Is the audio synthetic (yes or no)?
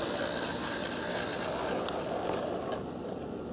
no